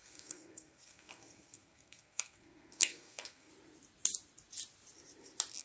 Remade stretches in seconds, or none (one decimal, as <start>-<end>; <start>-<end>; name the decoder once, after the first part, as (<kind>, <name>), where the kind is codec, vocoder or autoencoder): 0.0-3.5 (codec, SNAC)